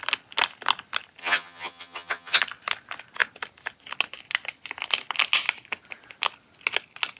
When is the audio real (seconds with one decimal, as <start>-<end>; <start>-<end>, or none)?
0.0-1.2; 2.4-7.2